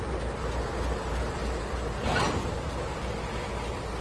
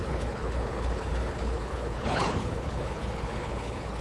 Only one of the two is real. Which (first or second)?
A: first